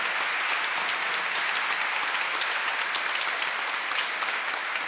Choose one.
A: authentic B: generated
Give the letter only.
A